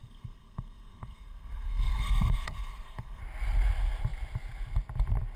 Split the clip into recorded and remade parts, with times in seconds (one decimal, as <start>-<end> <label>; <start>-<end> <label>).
0.0-3.2 remade; 3.2-5.4 recorded